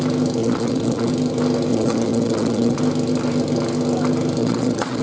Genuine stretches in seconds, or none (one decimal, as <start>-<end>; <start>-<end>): 0.0-0.4; 1.1-1.7; 2.8-4.4